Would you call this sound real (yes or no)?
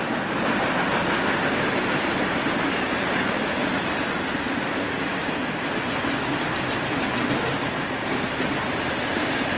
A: yes